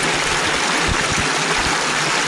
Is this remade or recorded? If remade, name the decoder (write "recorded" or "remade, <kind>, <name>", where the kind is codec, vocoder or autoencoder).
recorded